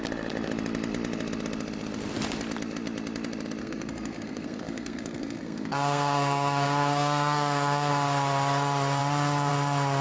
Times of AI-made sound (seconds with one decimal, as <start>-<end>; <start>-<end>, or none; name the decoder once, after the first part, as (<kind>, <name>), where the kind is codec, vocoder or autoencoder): 3.6-7.9 (codec, SNAC)